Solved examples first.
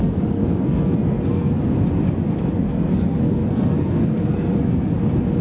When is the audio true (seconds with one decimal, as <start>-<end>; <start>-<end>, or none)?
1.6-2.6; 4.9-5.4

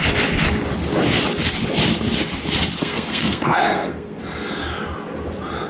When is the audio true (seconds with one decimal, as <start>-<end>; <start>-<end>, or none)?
0.0-2.8; 4.2-5.7

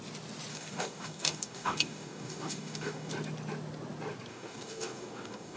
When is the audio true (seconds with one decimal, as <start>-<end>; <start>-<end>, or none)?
0.0-0.5; 3.1-4.3

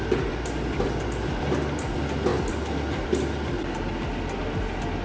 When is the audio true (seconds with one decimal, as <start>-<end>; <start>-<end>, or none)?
0.0-5.0

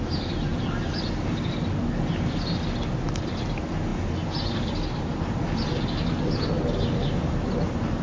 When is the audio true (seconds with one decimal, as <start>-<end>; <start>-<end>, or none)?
0.0-8.0